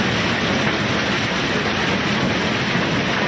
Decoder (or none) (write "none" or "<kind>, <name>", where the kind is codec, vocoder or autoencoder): none